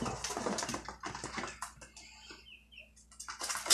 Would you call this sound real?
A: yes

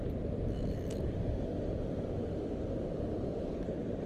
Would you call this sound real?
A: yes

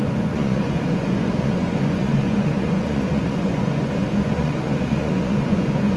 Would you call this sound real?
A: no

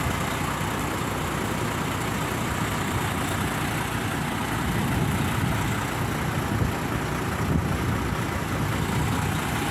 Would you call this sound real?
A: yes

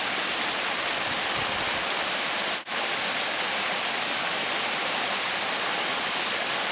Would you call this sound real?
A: yes